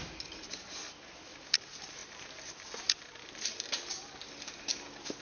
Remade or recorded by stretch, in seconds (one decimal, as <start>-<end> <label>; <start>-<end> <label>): 0.0-5.2 recorded